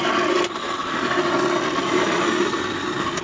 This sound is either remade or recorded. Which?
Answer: recorded